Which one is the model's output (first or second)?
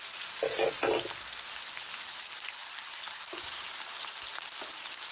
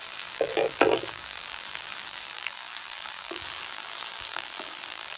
second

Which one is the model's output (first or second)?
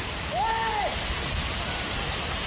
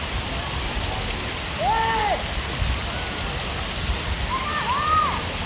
first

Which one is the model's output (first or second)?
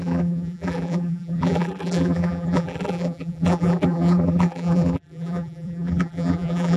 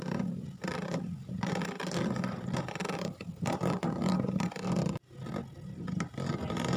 first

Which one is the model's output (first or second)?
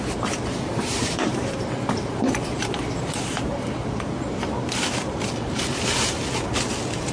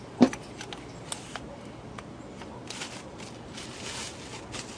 first